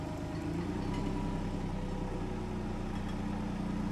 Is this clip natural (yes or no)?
yes